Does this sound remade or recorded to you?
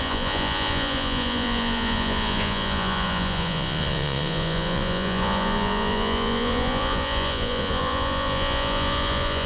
remade